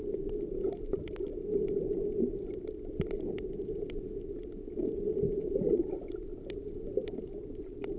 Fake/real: real